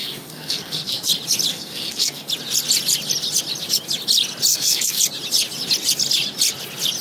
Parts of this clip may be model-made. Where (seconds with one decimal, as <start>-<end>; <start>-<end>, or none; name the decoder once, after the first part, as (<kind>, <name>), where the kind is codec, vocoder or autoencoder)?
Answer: 0.0-1.1 (codec, SNAC); 1.5-2.3; 4.5-5.0